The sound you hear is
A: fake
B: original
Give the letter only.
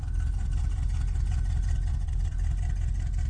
B